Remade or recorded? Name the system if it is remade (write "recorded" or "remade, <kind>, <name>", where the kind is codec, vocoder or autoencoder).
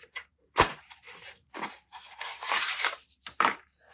remade, vocoder, BigVGAN v2